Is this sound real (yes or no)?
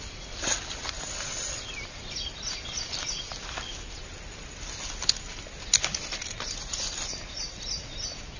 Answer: yes